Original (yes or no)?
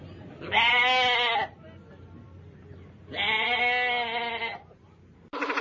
yes